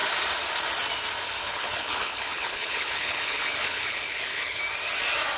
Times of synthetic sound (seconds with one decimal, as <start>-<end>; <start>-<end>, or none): 1.4-4.6